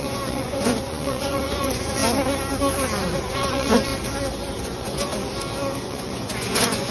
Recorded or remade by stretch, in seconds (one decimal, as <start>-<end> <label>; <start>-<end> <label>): 0.0-2.0 remade; 2.0-3.3 recorded; 3.3-3.9 remade; 3.9-4.6 recorded; 4.6-5.1 remade; 5.1-5.8 recorded; 5.8-6.9 remade